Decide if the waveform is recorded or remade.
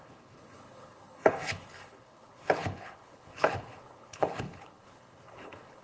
remade